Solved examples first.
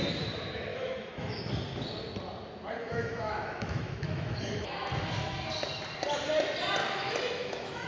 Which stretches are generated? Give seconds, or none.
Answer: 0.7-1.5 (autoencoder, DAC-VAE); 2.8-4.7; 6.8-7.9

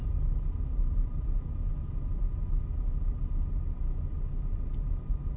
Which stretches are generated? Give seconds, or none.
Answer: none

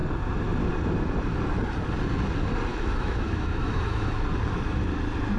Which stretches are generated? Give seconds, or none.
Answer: 2.7-4.1 (autoencoder, DAC-VAE)

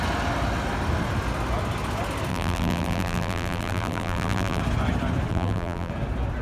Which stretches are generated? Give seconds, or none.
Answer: 2.3-4.6 (vocoder, BigVGAN v2); 5.3-5.9

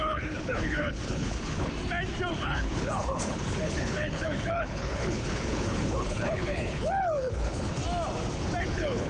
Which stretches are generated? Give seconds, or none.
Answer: 0.0-1.7 (codec, HILCodec); 2.3-7.8; 8.6-9.1

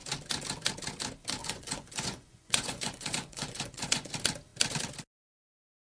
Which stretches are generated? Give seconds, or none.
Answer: 1.4-4.1 (vocoder, Vocos)